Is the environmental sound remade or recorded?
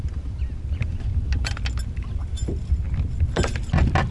recorded